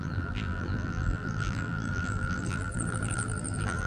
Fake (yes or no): yes